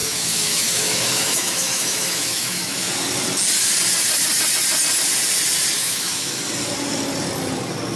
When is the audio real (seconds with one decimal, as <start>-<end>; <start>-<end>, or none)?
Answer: 2.9-5.8; 6.4-8.0